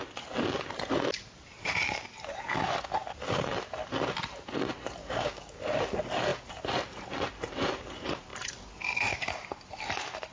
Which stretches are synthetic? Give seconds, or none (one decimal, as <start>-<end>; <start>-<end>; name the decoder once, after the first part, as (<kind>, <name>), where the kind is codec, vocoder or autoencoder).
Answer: 5.0-5.6 (codec, DAC)